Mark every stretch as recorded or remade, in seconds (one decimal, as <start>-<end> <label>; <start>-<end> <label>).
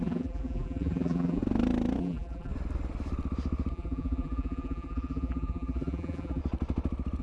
0.0-1.4 remade; 1.4-2.0 recorded; 2.0-2.5 remade; 2.5-3.7 recorded; 3.7-6.4 remade; 6.4-7.2 recorded